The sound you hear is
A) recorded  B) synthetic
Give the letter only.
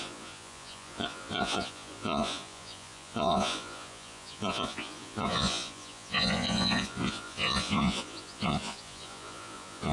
B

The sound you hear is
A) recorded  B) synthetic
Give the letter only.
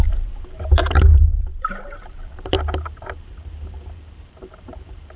B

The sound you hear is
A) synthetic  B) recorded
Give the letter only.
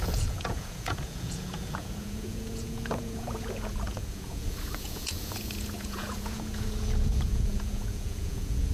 A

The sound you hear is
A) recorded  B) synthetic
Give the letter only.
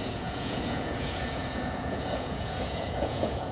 B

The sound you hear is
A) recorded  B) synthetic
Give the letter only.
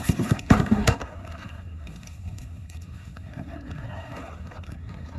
B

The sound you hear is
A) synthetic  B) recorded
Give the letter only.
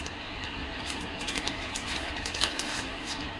A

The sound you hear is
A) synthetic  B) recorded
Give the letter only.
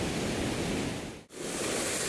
B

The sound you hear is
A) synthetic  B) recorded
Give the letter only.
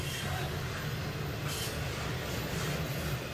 B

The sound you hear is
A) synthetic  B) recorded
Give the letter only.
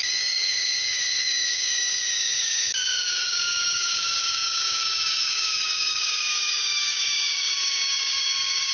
A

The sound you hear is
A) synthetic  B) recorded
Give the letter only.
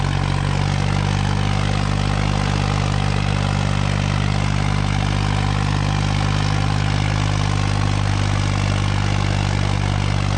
B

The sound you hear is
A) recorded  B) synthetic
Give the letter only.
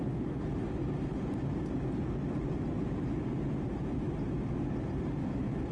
A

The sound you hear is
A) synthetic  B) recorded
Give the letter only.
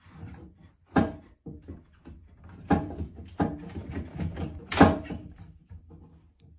A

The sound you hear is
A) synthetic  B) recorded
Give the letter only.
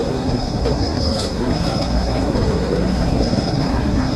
A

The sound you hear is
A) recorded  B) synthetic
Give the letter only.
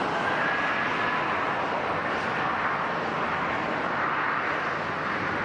A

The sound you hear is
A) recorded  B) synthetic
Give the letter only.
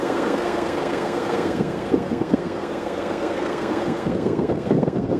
B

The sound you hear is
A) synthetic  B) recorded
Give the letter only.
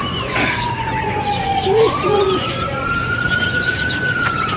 A